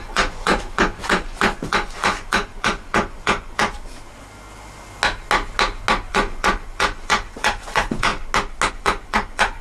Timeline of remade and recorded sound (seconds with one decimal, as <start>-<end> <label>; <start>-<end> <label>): 0.0-3.6 remade; 3.6-6.1 recorded; 6.1-8.1 remade; 8.1-8.7 recorded; 8.7-9.6 remade